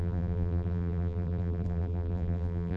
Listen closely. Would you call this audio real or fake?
fake